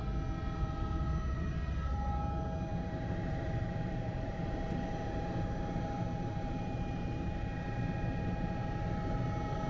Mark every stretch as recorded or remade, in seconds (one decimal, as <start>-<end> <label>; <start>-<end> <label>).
0.0-2.7 recorded; 2.7-7.5 remade; 7.5-9.7 recorded